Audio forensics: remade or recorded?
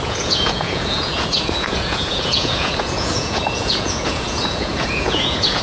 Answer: remade